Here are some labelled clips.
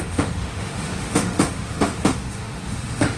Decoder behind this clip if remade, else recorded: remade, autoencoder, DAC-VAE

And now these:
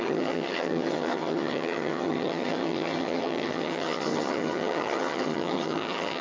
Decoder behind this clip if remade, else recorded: remade, vocoder, HiFi-GAN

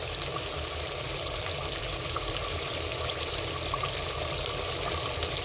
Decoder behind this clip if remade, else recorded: remade, vocoder, BigVGAN v2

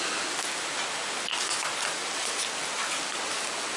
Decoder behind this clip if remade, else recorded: recorded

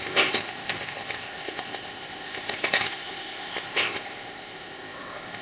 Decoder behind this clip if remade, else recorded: remade, codec, ZipCodec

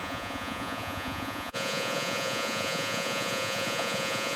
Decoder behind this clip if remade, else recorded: remade, vocoder, Vocos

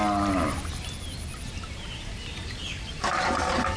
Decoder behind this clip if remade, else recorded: recorded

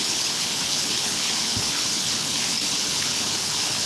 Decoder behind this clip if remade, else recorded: remade, codec, HILCodec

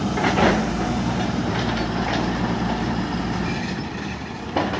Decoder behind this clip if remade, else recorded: remade, vocoder, BigVGAN v2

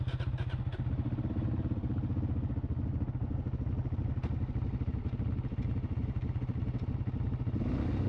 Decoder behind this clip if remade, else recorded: recorded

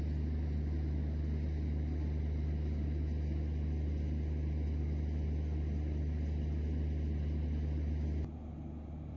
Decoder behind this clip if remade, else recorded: recorded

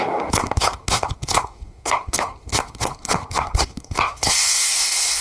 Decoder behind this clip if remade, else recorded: remade, codec, SNAC